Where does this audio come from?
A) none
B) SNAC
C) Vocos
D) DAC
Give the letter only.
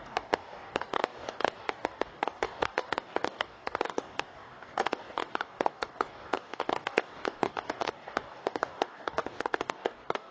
D